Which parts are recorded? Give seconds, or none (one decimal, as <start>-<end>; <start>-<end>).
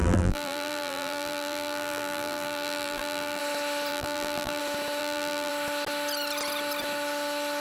3.4-3.9; 4.6-5.0; 5.5-7.6